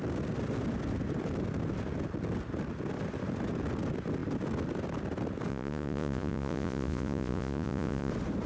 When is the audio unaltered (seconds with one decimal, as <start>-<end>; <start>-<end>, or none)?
0.0-5.5; 8.1-8.5